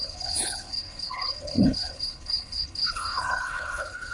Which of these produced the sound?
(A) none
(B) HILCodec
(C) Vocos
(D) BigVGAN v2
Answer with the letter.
B